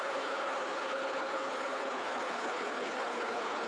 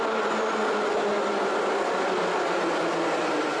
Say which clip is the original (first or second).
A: second